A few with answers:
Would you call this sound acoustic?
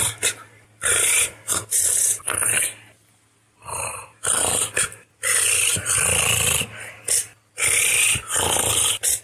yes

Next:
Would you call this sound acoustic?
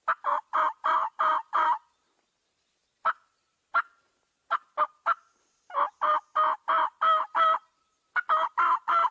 yes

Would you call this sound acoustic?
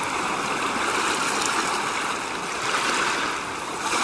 yes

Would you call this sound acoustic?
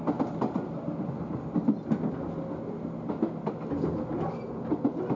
yes